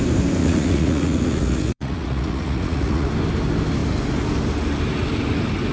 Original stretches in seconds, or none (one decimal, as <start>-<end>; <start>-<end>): 0.0-0.4; 3.1-5.7